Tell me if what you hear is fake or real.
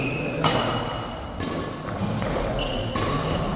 real